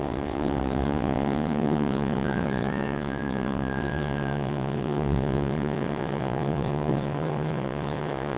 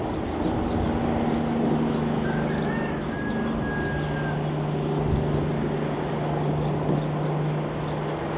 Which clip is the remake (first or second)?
first